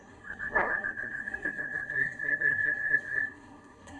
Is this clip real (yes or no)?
no